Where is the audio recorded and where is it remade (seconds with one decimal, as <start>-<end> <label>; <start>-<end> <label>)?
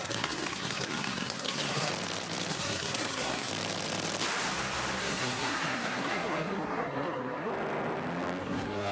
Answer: 0.0-1.9 remade; 1.9-2.5 recorded; 2.5-3.5 remade; 3.5-5.0 recorded; 5.0-7.5 remade; 7.5-8.4 recorded; 8.4-8.9 remade